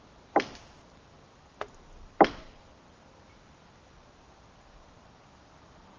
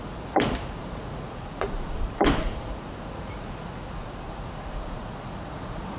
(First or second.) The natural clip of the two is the first